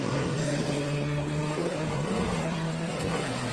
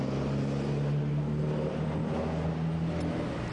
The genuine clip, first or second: second